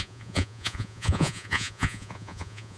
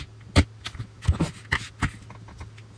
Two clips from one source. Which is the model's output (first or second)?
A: first